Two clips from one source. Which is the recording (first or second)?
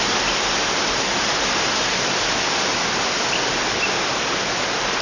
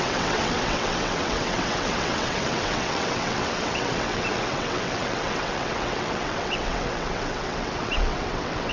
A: first